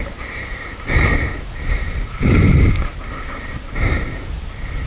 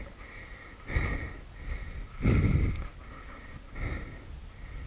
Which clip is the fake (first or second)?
first